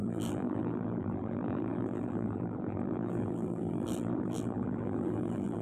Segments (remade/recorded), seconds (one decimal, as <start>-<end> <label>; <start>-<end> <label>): 0.0-5.6 remade